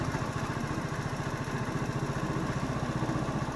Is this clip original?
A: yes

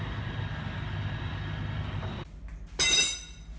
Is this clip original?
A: yes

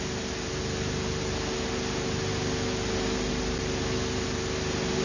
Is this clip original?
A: yes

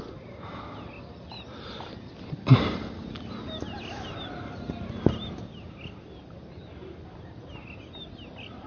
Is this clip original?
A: yes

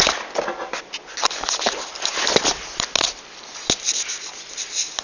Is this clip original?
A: yes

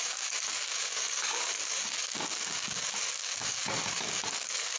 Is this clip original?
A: no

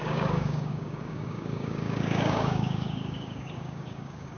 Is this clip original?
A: no